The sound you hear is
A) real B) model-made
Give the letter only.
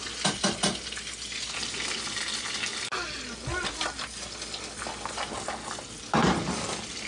A